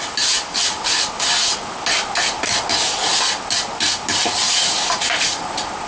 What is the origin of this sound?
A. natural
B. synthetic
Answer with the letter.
A